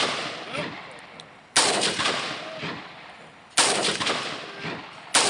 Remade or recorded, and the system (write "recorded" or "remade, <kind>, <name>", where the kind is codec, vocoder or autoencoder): recorded